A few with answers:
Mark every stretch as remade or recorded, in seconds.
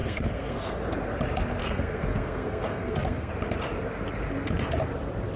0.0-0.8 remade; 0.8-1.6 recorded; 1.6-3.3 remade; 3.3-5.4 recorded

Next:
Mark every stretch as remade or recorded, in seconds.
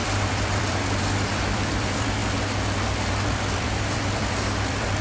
0.0-2.2 remade; 2.2-3.1 recorded; 3.1-5.0 remade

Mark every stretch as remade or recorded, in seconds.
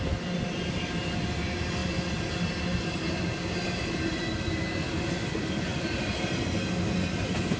0.0-7.6 recorded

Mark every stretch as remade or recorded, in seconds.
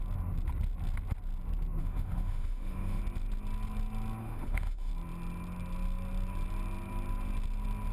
0.0-1.8 recorded; 1.8-3.0 remade; 3.0-4.2 recorded; 4.2-4.9 remade; 4.9-7.9 recorded